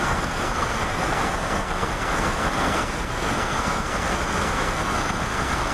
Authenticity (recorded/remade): remade